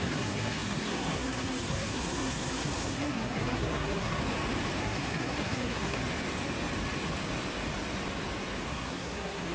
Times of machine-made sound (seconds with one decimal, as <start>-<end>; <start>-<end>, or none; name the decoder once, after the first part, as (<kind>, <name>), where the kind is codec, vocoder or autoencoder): 0.0-4.2 (codec, SNAC); 4.8-6.0; 8.7-9.5

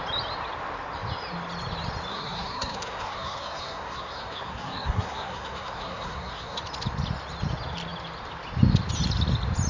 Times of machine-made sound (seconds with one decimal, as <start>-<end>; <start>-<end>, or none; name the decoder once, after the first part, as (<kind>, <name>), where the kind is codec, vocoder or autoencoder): 2.1-6.6 (codec, SNAC)

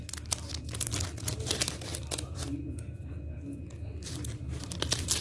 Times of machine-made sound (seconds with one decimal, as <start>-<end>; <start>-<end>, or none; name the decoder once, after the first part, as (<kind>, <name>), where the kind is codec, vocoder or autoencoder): none

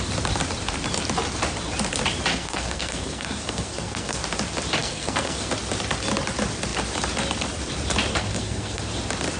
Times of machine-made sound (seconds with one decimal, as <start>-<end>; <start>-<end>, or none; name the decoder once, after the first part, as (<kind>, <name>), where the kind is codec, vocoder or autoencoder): 2.3-4.2 (codec, SNAC); 4.8-5.5; 8.1-8.8